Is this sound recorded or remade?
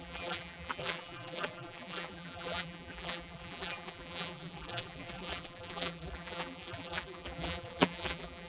remade